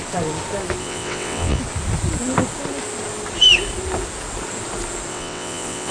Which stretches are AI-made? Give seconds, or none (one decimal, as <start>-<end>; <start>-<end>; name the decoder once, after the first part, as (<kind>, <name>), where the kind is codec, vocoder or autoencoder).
0.8-1.6 (vocoder, WaveNeXt); 5.1-5.9